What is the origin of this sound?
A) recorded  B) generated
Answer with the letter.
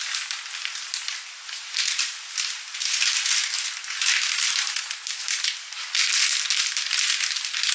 A